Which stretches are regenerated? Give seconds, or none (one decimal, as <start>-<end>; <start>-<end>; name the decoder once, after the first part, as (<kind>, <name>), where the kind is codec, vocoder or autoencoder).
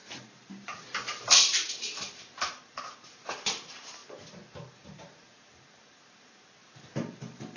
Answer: 0.0-4.0 (vocoder, BigVGAN v2); 4.7-7.6